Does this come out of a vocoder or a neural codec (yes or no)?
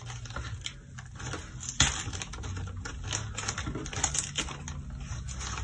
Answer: no